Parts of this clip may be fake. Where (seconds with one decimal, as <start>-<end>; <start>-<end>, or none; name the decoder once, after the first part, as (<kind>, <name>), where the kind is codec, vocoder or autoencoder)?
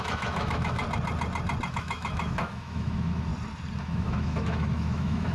0.0-0.8 (autoencoder, DAC-VAE); 1.7-3.3; 3.8-5.3